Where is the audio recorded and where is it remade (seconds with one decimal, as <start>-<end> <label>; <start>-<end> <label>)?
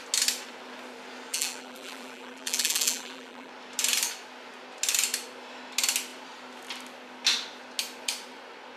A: 0.0-1.3 recorded; 1.3-3.5 remade; 3.5-8.8 recorded